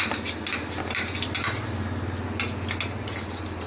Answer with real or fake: real